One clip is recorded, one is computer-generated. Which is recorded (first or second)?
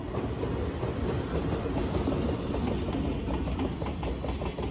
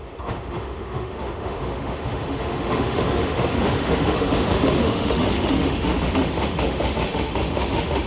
first